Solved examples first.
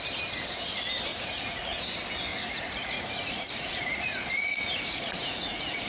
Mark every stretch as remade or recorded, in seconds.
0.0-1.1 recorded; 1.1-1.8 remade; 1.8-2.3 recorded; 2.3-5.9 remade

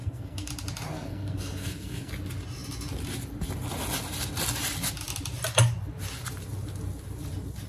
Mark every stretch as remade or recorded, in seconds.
0.0-0.5 remade; 0.5-0.9 recorded; 0.9-2.1 remade; 2.1-7.7 recorded

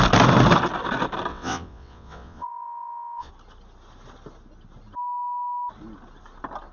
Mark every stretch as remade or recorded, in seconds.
0.0-1.3 recorded; 1.3-3.3 remade; 3.3-6.7 recorded

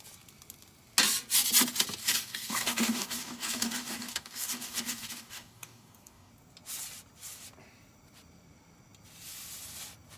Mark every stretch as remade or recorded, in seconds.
0.0-2.0 recorded; 2.0-6.3 remade; 6.3-10.2 recorded